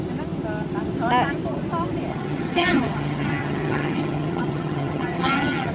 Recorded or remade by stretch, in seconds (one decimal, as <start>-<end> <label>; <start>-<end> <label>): 0.0-2.1 recorded; 2.1-5.7 remade